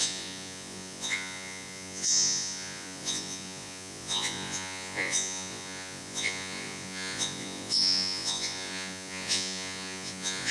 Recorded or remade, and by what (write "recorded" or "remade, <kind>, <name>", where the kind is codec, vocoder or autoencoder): remade, vocoder, Vocos